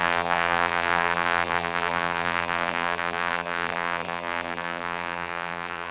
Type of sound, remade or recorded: remade